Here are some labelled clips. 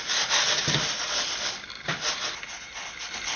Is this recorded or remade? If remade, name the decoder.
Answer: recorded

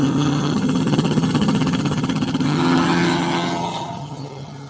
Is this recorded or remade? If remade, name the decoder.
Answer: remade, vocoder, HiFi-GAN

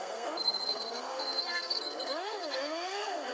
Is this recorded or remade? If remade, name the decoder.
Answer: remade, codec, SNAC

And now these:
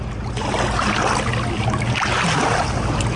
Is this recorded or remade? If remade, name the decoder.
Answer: recorded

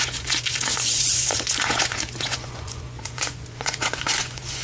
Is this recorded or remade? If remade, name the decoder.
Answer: remade, vocoder, Vocos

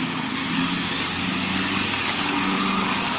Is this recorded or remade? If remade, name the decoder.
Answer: remade, codec, DAC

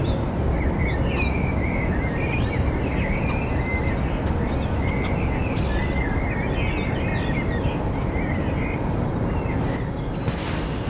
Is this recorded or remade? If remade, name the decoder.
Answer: recorded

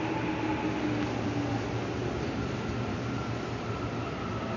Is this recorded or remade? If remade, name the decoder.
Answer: recorded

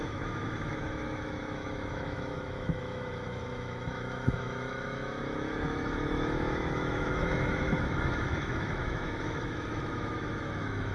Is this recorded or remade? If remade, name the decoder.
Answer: remade, autoencoder, DAC-VAE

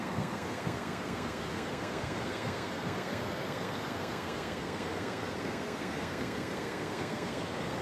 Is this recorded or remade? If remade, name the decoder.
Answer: remade, codec, SNAC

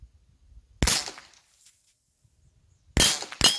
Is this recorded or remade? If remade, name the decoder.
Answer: recorded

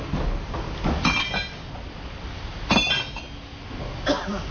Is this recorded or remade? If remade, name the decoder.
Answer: recorded